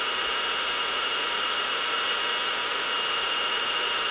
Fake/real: fake